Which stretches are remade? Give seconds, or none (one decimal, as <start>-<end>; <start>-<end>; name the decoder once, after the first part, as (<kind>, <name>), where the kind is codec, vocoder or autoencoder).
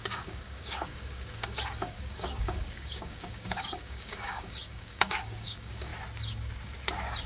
0.0-5.9 (codec, DAC)